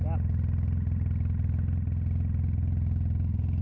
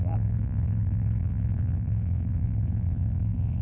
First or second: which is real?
first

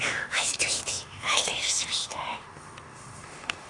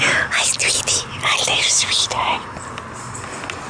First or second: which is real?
second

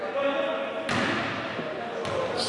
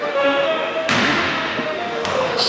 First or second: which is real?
first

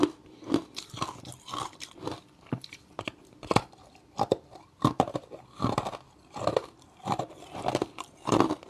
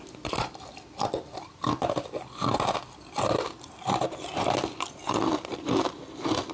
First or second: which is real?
second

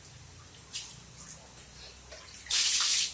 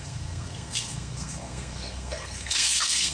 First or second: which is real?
first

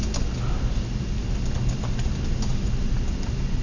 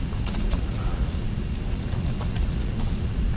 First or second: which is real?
first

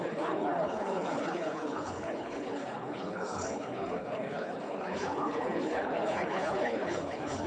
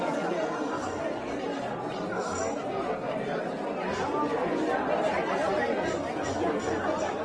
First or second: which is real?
second